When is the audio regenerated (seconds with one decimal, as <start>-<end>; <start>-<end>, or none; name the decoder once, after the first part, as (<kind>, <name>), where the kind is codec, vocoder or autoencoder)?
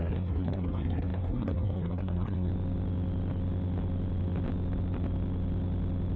0.0-2.5 (codec, SNAC)